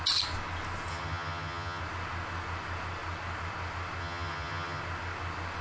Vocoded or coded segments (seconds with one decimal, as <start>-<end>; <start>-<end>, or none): 0.9-1.8; 4.0-4.8